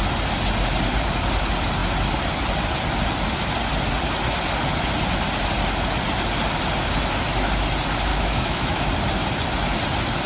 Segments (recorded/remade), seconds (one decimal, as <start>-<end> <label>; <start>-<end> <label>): 0.0-8.1 recorded; 8.1-8.9 remade; 8.9-10.3 recorded